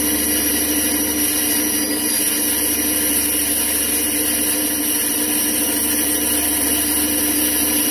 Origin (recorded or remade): recorded